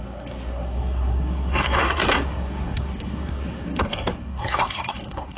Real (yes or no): no